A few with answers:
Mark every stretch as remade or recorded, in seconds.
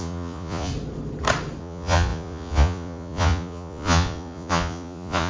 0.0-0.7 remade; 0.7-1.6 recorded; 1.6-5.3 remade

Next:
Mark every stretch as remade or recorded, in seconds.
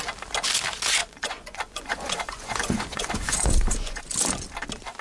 0.0-1.0 recorded; 1.0-4.0 remade; 4.0-5.0 recorded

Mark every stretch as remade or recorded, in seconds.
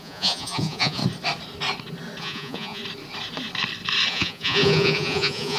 0.0-1.0 remade; 1.0-2.2 recorded; 2.2-2.8 remade; 2.8-4.1 recorded; 4.1-5.6 remade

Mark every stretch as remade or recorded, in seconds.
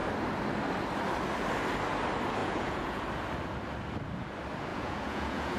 0.0-2.4 recorded; 2.4-3.0 remade; 3.0-4.7 recorded; 4.7-5.6 remade